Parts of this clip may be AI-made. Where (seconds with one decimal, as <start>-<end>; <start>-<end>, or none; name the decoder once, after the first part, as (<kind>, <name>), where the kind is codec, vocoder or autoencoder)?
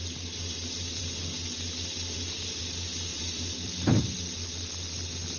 3.1-4.2 (vocoder, BigVGAN v2)